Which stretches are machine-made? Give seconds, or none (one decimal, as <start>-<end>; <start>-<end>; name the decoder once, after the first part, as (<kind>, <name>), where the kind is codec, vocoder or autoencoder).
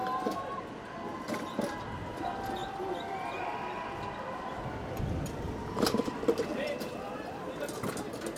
6.5-7.4 (vocoder, BigVGAN v2)